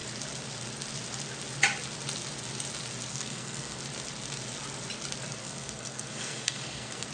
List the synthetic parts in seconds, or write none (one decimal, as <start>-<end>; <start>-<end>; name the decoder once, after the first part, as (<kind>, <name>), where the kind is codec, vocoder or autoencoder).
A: 3.1-3.8 (codec, SNAC); 5.4-7.1